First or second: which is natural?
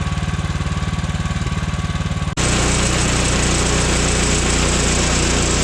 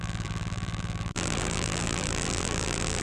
first